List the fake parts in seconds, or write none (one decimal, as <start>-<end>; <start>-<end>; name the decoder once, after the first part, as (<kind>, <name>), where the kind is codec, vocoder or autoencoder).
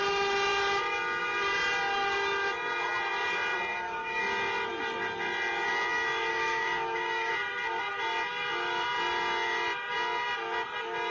3.7-4.2 (codec, DAC); 6.3-7.3